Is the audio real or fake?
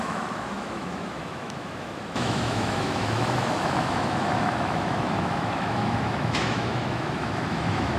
fake